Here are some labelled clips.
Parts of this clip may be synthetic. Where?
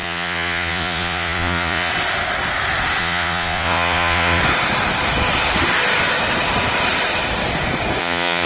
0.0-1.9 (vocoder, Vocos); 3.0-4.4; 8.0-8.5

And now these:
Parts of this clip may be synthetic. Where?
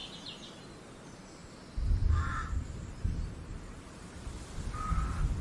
none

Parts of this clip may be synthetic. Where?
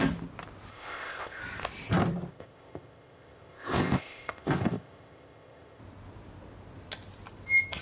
0.7-1.4 (codec, ZipCodec); 2.3-5.8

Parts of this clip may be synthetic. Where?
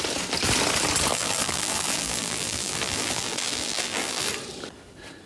1.1-4.3 (vocoder, BigVGAN v2)